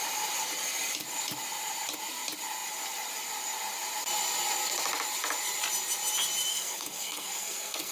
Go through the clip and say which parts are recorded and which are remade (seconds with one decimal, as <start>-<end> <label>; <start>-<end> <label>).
0.0-6.5 recorded; 6.5-7.9 remade